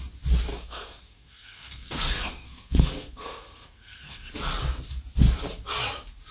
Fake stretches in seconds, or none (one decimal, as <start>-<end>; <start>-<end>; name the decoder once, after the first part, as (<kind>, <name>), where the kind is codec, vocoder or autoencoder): 0.5-4.3 (codec, SNAC)